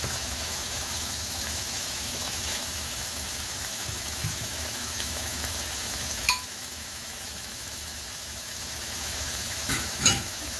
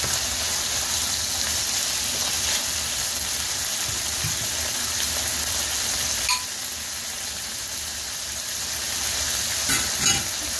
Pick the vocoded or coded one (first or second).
first